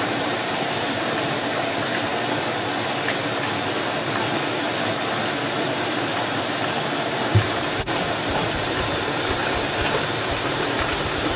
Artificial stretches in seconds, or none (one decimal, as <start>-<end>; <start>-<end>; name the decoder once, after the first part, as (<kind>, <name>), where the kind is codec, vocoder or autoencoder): 0.0-2.1 (vocoder, BigVGAN v2); 5.5-6.1; 6.7-9.4; 10.5-11.4